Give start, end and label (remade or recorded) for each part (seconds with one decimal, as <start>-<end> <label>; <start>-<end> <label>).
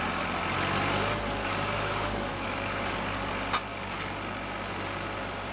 0.0-1.4 recorded; 1.4-3.3 remade; 3.3-3.7 recorded; 3.7-4.4 remade; 4.4-5.5 recorded